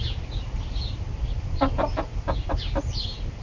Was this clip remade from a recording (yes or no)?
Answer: no